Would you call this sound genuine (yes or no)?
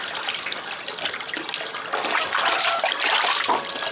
yes